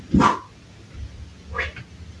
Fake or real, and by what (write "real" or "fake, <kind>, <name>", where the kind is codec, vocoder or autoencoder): real